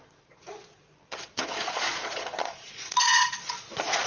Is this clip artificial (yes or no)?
yes